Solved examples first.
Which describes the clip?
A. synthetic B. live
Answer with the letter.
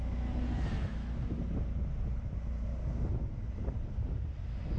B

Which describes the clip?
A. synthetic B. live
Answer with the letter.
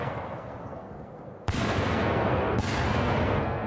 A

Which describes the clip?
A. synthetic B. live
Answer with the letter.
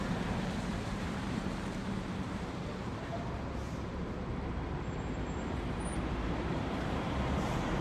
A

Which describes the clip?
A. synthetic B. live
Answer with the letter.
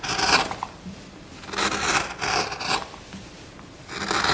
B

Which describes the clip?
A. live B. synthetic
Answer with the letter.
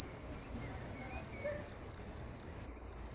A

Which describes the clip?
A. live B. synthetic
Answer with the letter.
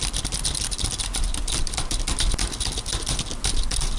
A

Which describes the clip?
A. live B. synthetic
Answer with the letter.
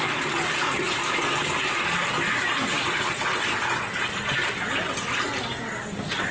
A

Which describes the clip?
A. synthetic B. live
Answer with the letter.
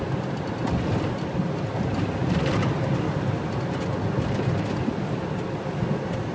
B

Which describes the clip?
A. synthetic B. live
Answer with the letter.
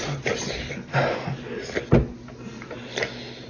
B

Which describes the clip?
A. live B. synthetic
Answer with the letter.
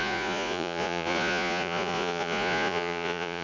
B